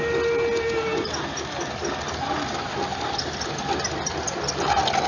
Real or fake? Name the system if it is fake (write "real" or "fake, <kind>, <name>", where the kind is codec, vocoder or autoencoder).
real